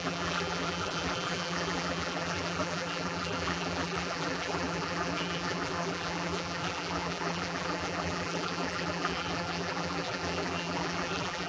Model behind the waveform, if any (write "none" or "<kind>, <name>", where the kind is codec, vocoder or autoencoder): vocoder, BigVGAN v2